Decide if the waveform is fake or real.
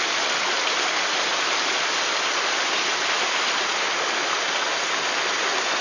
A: real